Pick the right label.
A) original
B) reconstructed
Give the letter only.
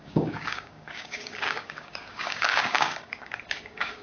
B